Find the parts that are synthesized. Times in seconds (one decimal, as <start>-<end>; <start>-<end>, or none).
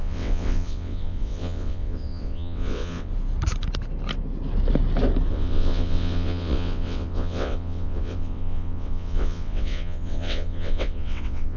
0.0-3.1; 5.3-11.6